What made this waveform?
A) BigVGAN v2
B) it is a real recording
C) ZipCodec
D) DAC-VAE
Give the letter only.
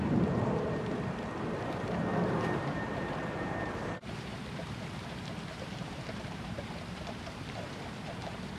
A